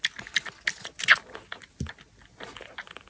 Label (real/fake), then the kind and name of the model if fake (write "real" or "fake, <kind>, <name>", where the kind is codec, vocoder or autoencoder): real